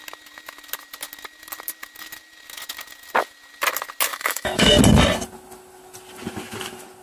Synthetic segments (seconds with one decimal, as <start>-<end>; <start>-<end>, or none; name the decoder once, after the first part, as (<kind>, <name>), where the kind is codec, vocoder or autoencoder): 4.1-4.7 (autoencoder, DAC-VAE)